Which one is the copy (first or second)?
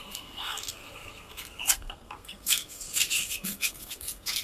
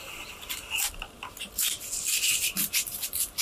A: first